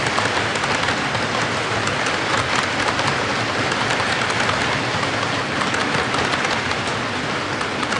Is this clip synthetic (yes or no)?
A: no